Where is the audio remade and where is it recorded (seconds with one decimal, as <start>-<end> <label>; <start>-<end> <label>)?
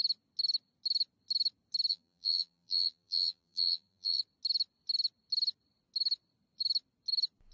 0.0-1.9 recorded; 1.9-4.2 remade; 4.2-7.5 recorded